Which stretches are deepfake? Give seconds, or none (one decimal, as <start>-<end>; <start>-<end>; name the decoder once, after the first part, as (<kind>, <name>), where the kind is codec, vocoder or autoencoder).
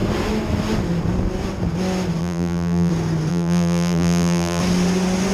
2.2-2.9 (vocoder, BigVGAN v2); 3.3-4.6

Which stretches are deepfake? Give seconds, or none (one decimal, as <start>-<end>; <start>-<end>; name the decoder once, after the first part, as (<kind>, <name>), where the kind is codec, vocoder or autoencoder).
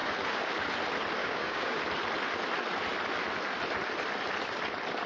1.2-1.8 (codec, DAC)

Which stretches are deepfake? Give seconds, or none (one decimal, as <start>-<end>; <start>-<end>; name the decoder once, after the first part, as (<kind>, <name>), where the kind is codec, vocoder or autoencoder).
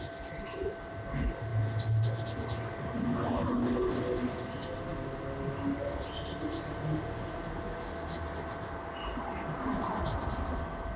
none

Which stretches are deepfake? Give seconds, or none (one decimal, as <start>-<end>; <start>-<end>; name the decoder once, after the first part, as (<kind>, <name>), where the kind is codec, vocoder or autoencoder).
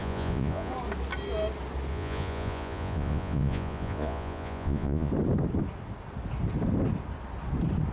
0.0-0.7 (vocoder, Vocos); 1.9-5.1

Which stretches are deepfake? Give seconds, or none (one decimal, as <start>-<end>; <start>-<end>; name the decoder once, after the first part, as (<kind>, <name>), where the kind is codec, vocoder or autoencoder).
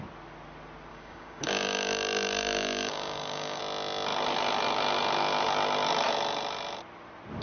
0.9-3.6 (codec, DAC)